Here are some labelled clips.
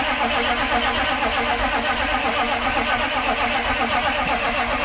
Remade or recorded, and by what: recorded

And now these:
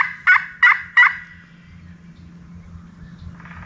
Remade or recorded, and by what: recorded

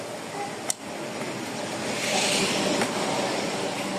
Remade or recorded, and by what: remade, vocoder, BigVGAN v2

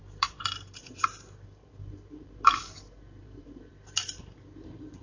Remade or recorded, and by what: remade, vocoder, BigVGAN v2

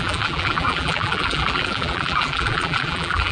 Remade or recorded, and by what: remade, vocoder, BigVGAN v2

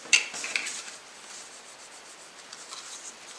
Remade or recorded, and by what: remade, vocoder, BigVGAN v2